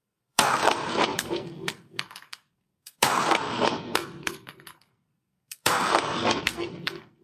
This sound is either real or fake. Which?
fake